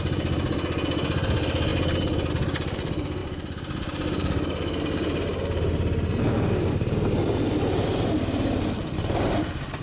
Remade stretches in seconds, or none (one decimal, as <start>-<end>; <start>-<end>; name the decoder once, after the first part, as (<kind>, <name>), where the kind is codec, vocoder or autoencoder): 1.7-2.3 (vocoder, BigVGAN v2); 3.2-6.2